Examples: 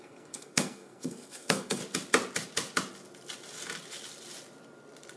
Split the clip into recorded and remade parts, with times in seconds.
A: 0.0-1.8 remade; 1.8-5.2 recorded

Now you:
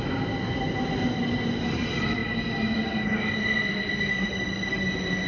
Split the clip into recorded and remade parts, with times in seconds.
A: 0.0-4.1 recorded; 4.1-4.8 remade; 4.8-5.3 recorded

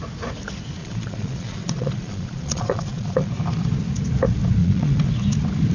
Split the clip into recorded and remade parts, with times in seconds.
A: 0.0-0.8 recorded; 0.8-3.3 remade; 3.3-4.6 recorded; 4.6-5.1 remade; 5.1-5.7 recorded

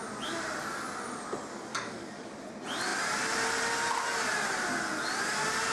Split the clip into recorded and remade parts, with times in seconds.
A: 0.0-1.7 recorded; 1.7-2.4 remade; 2.4-5.7 recorded

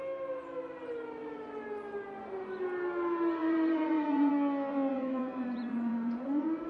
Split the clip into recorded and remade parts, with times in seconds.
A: 0.0-3.4 recorded; 3.4-4.3 remade; 4.3-4.7 recorded; 4.7-6.7 remade